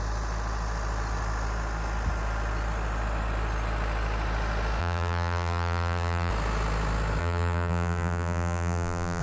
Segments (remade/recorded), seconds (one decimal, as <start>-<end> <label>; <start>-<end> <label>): 0.0-4.8 recorded; 4.8-6.3 remade; 6.3-7.2 recorded; 7.2-9.2 remade

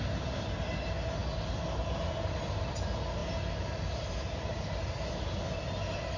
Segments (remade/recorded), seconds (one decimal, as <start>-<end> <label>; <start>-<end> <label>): 0.0-6.2 recorded